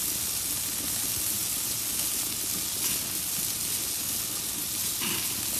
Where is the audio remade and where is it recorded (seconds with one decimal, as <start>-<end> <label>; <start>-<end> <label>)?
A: 0.0-5.6 recorded